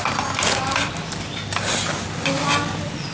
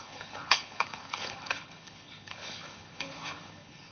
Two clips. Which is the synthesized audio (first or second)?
second